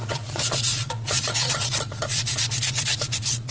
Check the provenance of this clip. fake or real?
fake